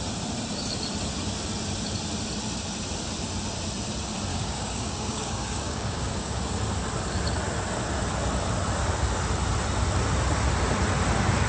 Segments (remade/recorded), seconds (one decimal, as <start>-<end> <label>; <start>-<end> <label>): 0.0-4.3 recorded; 4.3-6.4 remade; 6.4-11.5 recorded